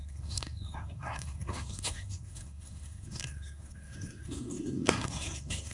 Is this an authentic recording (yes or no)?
no